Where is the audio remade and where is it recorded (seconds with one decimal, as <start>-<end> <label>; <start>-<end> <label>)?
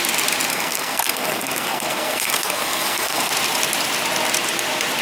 0.0-0.5 recorded; 0.5-3.3 remade; 3.3-5.0 recorded